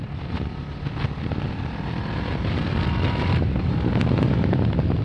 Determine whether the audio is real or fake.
real